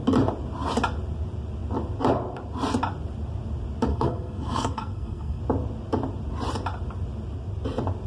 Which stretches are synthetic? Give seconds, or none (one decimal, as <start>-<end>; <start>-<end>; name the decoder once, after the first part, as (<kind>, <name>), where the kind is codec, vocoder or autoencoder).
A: 3.9-5.4 (codec, SNAC)